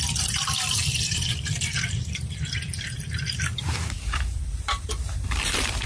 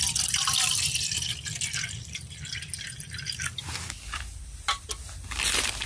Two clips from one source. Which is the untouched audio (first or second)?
second